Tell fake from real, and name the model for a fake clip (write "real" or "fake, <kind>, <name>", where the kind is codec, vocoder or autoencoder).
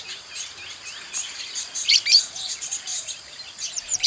fake, vocoder, BigVGAN v2